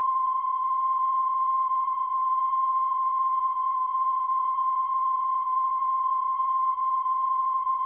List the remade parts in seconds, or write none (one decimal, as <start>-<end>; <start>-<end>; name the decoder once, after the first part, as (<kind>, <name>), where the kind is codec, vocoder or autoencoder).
0.0-7.9 (vocoder, Vocos)